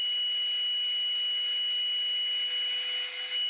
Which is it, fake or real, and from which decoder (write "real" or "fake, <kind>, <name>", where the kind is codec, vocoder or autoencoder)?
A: real